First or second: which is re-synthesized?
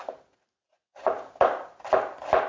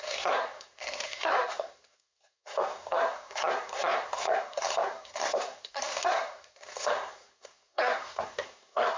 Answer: second